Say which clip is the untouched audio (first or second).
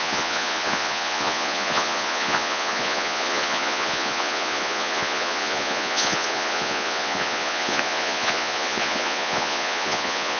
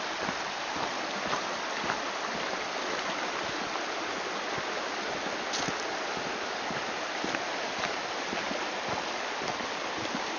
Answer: second